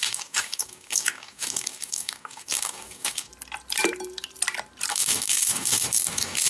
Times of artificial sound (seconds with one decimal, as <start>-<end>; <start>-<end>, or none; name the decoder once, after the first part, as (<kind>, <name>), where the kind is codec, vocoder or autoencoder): 0.0-3.3 (codec, DAC); 4.9-6.5